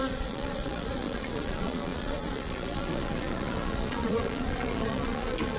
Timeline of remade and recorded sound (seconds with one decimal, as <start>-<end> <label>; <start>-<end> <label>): 0.0-5.6 remade